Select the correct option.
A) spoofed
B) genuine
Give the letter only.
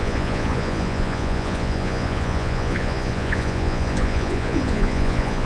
A